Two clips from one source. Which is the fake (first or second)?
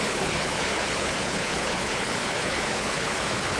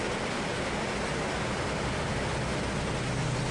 first